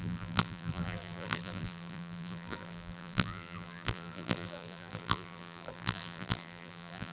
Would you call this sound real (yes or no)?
no